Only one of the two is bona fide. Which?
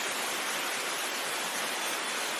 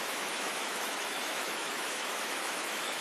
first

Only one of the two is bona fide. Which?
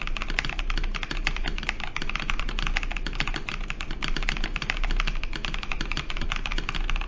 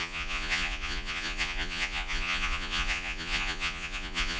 first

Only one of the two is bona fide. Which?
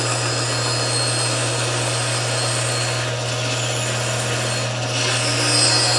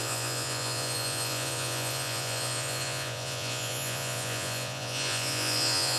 first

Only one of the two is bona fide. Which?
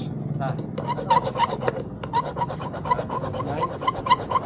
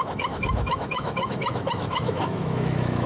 first